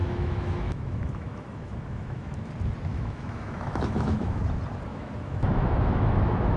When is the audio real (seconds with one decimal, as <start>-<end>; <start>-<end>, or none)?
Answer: 2.5-2.9; 4.4-4.9